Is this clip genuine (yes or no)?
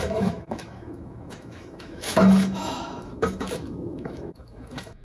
no